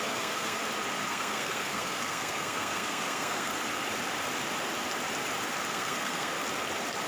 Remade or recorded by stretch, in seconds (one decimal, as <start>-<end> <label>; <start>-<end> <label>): 0.0-0.6 remade; 0.6-1.1 recorded; 1.1-3.5 remade; 3.5-5.7 recorded; 5.7-6.3 remade; 6.3-7.1 recorded